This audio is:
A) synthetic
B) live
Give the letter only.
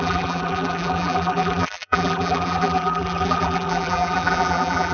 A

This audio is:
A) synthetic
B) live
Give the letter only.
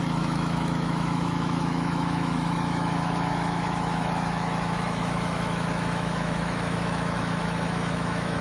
A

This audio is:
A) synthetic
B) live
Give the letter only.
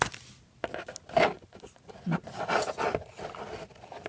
B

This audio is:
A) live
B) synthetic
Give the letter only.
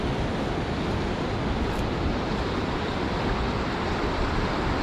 A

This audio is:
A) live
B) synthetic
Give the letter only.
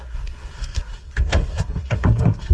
B